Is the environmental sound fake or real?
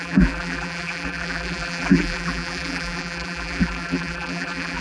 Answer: fake